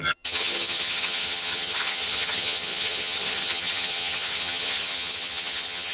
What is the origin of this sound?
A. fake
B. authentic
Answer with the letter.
A